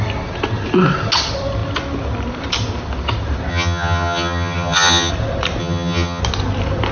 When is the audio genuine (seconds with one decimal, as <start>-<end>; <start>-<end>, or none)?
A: 0.0-3.5; 5.1-5.6; 6.2-6.9